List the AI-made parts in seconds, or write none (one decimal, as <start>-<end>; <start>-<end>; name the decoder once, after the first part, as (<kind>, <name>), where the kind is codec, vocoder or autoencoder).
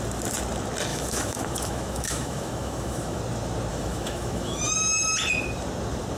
0.9-3.2 (autoencoder, DAC-VAE); 3.7-4.6